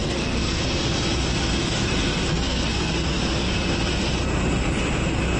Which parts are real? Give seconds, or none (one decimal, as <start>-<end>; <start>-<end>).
0.6-2.3; 3.2-5.4